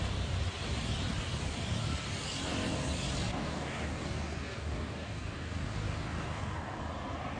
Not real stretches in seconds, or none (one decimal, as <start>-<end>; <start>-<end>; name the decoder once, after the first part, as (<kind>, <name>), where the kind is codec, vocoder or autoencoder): 3.3-6.8 (codec, DAC)

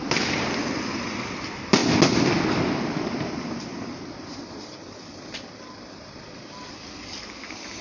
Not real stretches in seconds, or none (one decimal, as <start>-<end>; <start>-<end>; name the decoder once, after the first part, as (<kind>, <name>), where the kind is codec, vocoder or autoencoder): 0.0-1.8 (vocoder, BigVGAN v2); 2.5-7.8